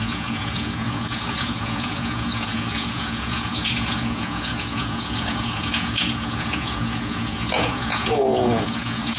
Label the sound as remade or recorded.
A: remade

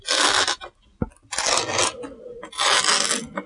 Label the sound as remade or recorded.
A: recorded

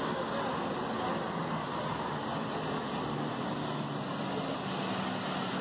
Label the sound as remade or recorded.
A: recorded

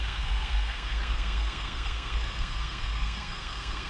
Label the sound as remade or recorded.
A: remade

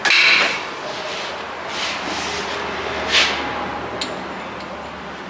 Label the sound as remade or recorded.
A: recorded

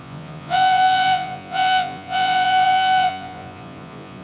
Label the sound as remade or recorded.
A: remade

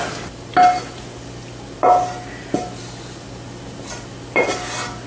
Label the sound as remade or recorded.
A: recorded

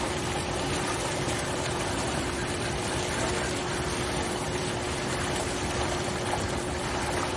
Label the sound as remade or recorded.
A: remade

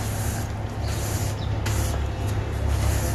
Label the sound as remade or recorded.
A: recorded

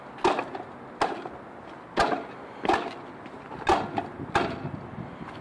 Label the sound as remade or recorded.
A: recorded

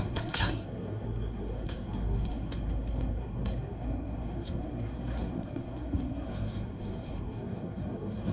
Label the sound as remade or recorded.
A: remade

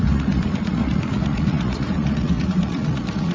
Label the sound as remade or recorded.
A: remade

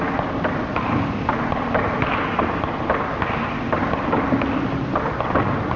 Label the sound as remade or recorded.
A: recorded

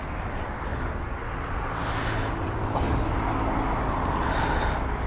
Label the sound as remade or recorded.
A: recorded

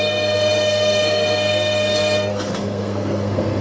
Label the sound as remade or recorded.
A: remade